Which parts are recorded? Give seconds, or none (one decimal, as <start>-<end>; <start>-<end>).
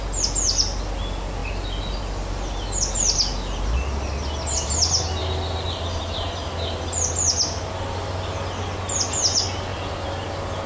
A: 0.0-10.7